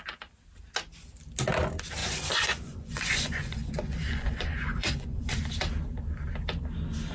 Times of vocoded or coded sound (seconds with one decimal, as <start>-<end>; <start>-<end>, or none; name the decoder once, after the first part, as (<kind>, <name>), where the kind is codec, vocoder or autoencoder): 2.0-5.4 (vocoder, Vocos)